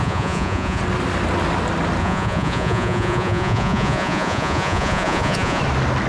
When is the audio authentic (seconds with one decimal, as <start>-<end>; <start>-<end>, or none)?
0.8-2.0; 5.6-6.1